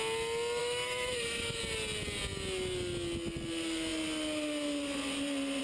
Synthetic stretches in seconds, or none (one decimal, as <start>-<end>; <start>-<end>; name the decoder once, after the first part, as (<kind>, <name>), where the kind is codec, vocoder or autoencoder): 0.6-1.6 (autoencoder, DAC-VAE)